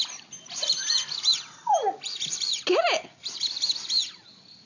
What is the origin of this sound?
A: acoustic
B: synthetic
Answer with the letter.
A